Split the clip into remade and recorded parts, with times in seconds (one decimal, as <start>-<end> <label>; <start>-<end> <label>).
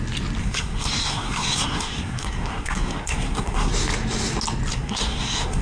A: 0.0-0.4 recorded; 0.4-3.7 remade; 3.7-4.7 recorded; 4.7-5.6 remade